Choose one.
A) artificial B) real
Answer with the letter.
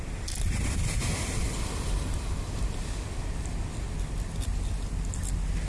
B